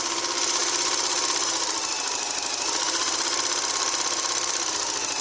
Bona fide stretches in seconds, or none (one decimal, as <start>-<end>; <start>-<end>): 0.0-5.2